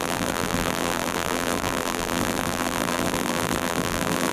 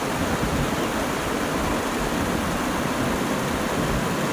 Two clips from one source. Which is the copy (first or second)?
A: first